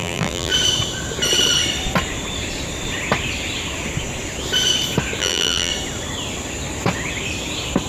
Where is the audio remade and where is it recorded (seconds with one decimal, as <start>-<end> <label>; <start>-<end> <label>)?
0.0-0.5 remade; 0.5-5.2 recorded; 5.2-5.7 remade; 5.7-7.9 recorded